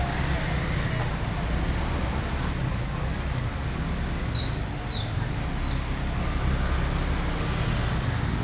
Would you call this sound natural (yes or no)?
yes